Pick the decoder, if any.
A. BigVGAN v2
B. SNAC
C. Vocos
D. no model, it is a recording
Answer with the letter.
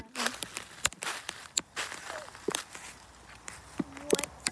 D